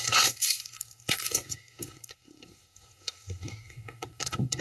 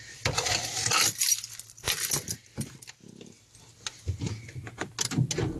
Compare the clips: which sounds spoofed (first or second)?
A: first